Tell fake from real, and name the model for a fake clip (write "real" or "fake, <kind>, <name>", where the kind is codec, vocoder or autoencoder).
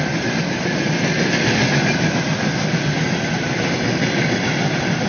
real